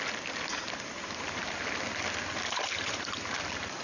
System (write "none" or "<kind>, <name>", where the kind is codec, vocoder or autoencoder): none